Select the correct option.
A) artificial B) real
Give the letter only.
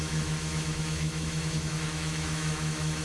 A